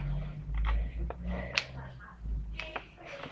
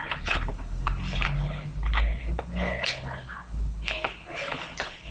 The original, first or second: first